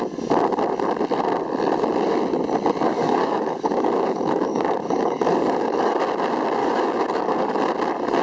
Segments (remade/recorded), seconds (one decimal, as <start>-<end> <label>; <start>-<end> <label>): 0.0-2.9 recorded; 2.9-6.0 remade; 6.0-6.6 recorded; 6.6-7.6 remade; 7.6-8.2 recorded